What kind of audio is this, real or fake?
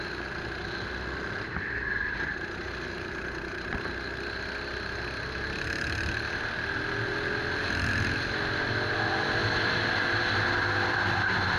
real